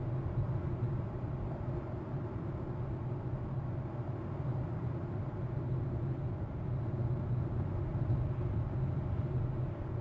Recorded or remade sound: recorded